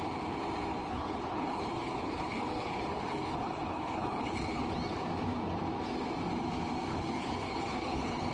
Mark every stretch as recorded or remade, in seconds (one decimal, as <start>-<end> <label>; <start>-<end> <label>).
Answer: 0.0-0.8 recorded; 0.8-4.6 remade; 4.6-6.9 recorded; 6.9-8.3 remade